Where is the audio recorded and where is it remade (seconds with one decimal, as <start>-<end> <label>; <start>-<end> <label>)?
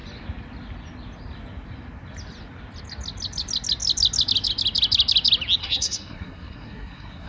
0.0-5.6 recorded; 5.6-7.3 remade